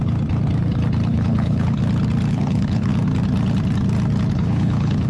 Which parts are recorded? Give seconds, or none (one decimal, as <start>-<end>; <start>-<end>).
0.0-1.1; 1.8-2.3; 2.9-4.3